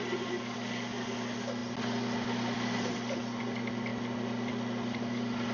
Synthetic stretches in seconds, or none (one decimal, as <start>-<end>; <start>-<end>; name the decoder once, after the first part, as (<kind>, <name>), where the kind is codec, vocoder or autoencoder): none